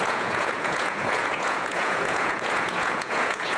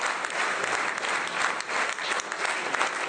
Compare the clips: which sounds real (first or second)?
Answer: second